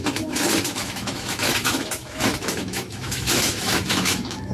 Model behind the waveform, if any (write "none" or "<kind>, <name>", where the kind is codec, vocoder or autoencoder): autoencoder, DAC-VAE